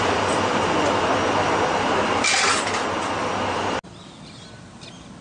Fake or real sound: real